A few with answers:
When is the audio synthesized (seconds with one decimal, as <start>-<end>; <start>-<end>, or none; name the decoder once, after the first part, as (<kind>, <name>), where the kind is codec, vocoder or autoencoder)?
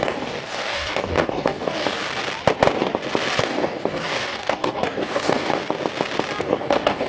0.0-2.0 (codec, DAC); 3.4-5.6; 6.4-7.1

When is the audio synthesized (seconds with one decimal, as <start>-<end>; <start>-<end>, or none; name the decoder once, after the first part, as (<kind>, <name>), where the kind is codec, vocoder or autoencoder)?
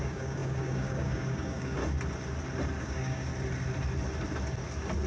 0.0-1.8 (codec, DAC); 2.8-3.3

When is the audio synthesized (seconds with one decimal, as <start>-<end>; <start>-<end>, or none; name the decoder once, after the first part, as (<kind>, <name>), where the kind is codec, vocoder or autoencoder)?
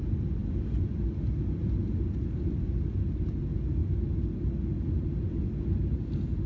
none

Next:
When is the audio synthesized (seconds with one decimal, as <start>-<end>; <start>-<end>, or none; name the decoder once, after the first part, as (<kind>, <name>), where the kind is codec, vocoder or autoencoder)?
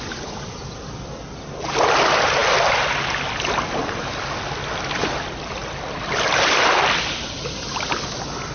none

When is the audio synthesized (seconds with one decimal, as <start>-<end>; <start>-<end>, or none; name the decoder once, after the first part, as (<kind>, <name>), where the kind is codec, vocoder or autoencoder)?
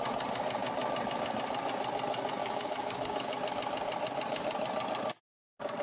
2.4-3.3 (codec, DAC)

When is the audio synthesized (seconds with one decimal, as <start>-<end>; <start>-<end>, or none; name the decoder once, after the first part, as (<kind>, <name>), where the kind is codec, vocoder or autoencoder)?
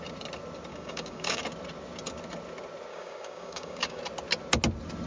0.7-1.4 (codec, DAC); 2.9-4.0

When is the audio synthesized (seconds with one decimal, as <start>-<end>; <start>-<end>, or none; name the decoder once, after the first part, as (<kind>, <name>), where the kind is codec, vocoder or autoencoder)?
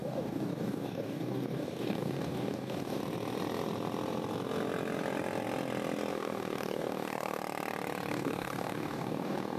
0.0-3.0 (codec, DAC); 6.1-7.4; 8.1-9.6